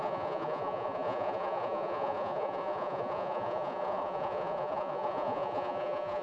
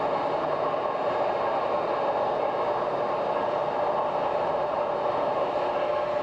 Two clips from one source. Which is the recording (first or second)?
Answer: second